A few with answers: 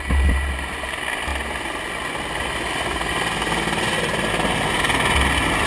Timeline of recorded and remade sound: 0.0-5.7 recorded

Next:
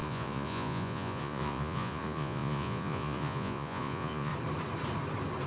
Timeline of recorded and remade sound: 0.0-4.3 remade; 4.3-5.5 recorded

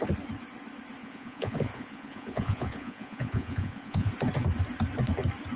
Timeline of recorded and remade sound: 0.0-1.0 recorded; 1.0-4.1 remade; 4.1-5.6 recorded